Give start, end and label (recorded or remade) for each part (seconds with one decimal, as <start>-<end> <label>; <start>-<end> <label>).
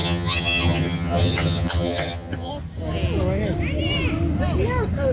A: 0.0-2.5 remade; 2.5-5.1 recorded